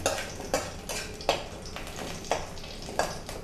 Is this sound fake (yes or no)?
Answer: no